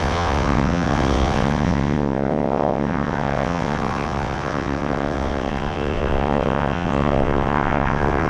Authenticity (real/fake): fake